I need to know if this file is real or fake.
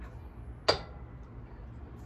real